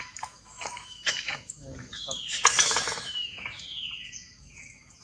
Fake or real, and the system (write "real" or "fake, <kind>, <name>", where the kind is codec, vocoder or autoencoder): fake, autoencoder, DAC-VAE